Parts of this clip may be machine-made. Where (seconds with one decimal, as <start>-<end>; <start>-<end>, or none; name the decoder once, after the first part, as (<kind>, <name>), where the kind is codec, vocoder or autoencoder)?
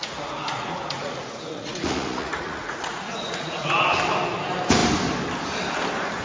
0.0-3.7 (vocoder, Vocos)